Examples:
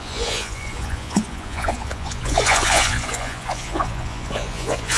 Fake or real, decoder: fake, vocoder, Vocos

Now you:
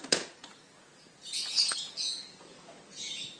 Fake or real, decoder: fake, vocoder, Vocos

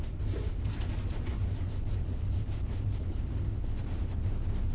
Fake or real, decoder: real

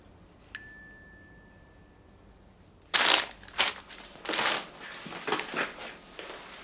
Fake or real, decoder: real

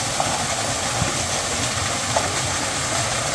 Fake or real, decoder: real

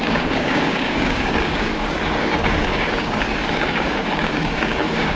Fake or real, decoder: fake, codec, DAC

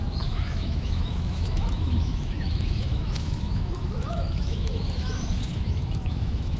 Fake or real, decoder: fake, autoencoder, DAC-VAE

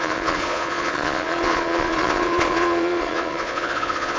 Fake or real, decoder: fake, vocoder, Vocos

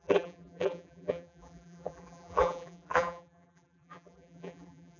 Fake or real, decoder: fake, vocoder, BigVGAN v2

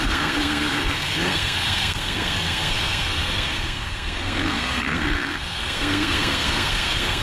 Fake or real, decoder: fake, codec, SNAC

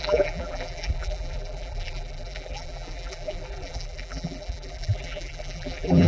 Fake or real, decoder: fake, vocoder, BigVGAN v2